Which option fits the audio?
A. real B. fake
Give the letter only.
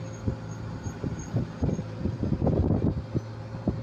A